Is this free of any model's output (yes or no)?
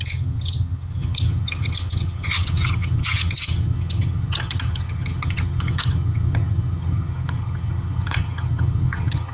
no